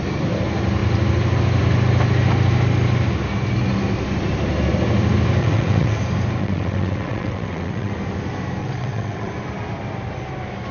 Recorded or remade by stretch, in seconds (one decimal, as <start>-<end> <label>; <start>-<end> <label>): 0.0-5.4 recorded; 5.4-6.0 remade; 6.0-6.4 recorded; 6.4-7.9 remade; 7.9-8.6 recorded; 8.6-9.3 remade; 9.3-10.7 recorded